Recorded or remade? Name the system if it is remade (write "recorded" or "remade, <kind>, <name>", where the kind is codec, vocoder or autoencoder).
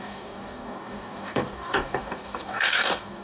remade, codec, DAC